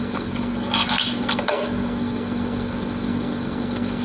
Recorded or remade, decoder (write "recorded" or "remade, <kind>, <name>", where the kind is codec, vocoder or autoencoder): remade, codec, SNAC